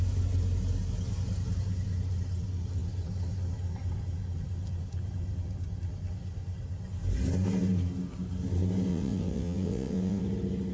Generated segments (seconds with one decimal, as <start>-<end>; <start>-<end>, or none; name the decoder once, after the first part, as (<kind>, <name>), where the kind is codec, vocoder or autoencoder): 8.9-10.2 (vocoder, WaveNeXt)